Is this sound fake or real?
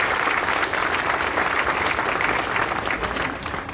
real